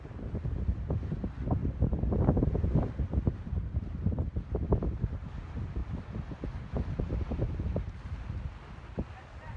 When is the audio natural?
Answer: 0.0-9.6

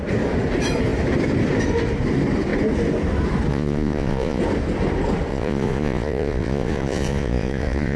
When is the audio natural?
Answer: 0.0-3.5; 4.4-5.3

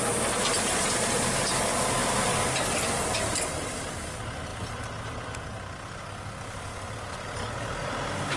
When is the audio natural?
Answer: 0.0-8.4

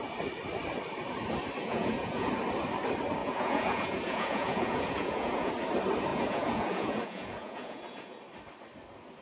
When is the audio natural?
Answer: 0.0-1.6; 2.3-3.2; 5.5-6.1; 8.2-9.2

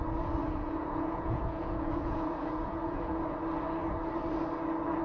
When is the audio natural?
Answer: 0.0-0.4; 3.4-5.0

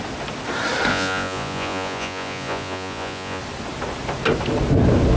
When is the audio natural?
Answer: 0.0-0.9; 3.4-5.2

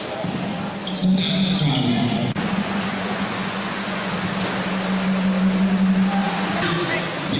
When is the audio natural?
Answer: 0.0-2.2; 4.1-6.2; 7.0-7.4

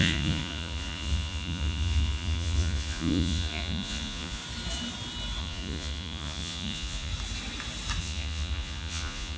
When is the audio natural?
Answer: 4.4-5.4; 7.1-8.0